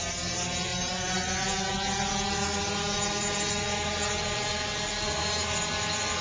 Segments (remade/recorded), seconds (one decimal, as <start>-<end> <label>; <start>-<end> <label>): 0.0-6.2 recorded